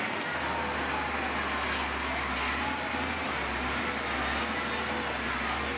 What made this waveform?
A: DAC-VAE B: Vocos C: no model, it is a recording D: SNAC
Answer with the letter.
C